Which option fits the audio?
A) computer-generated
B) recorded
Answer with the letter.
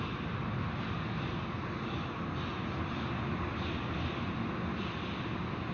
B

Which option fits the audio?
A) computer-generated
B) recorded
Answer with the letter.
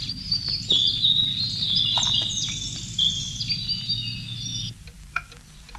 B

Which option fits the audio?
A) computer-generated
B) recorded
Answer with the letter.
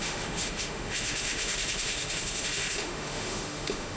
A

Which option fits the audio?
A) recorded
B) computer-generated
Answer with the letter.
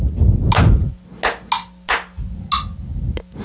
A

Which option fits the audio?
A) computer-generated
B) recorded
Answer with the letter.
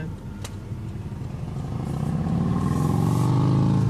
B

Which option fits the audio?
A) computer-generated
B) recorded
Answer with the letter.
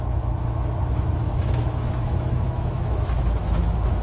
A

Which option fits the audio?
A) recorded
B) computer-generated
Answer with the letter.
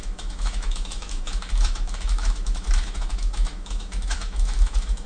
B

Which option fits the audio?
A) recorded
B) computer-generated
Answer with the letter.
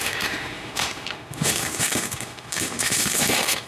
B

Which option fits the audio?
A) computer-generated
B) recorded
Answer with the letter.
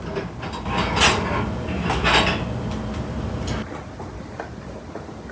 B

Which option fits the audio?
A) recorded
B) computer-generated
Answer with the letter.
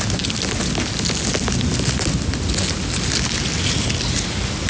A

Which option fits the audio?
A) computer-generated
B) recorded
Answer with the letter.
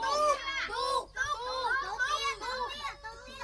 B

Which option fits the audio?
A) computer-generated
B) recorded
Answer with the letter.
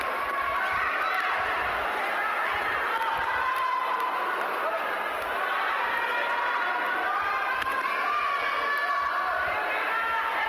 B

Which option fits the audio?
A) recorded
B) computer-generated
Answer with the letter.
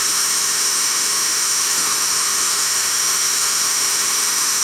B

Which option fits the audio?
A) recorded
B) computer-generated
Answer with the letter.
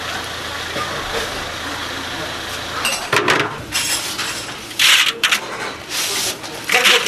A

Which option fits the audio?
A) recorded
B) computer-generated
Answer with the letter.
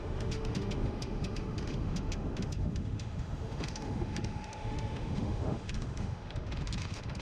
B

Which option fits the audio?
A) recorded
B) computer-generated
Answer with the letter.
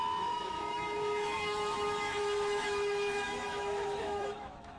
B